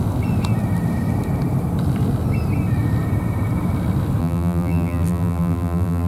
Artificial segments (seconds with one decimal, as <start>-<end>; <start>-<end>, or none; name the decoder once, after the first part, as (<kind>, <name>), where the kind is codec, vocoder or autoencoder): 4.2-6.1 (vocoder, BigVGAN v2)